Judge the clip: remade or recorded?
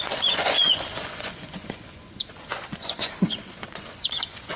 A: remade